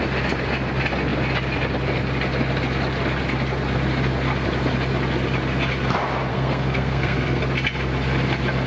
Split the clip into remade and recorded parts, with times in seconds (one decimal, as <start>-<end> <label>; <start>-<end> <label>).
0.0-6.3 recorded; 6.3-7.4 remade; 7.4-8.7 recorded